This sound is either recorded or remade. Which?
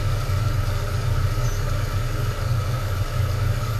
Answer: remade